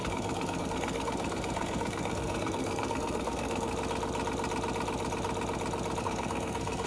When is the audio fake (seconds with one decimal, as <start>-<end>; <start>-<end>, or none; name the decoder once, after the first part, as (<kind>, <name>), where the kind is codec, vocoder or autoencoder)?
0.0-3.7 (codec, SNAC); 6.0-6.9